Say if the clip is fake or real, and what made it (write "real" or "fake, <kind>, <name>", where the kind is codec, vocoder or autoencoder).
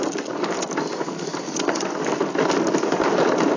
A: real